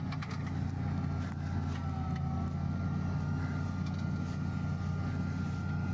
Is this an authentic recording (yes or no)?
yes